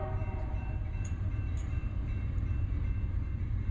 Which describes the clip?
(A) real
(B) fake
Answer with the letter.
B